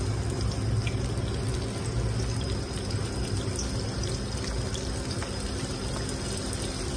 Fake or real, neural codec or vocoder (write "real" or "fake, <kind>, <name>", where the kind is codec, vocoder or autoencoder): real